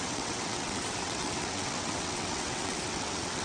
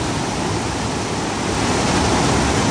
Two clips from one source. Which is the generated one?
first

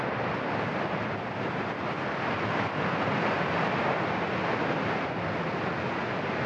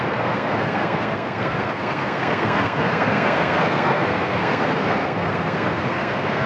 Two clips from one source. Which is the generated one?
second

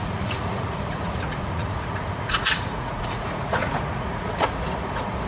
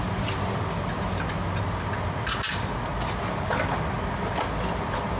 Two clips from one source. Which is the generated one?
first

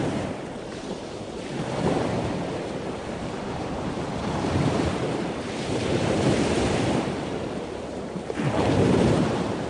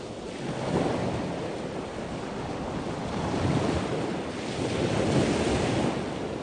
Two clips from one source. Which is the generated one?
first